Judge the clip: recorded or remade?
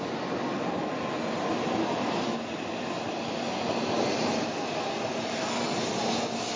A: recorded